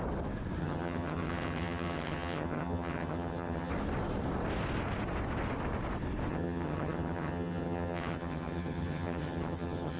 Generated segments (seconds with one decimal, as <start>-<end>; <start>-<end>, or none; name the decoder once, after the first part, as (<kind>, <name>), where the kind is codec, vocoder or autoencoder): 0.6-3.7 (vocoder, HiFi-GAN); 6.3-10.0